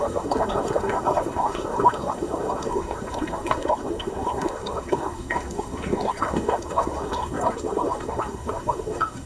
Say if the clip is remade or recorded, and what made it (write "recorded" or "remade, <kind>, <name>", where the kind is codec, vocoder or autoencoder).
remade, codec, SNAC